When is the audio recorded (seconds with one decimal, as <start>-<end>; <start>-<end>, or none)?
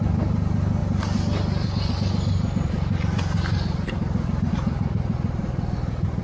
0.0-6.2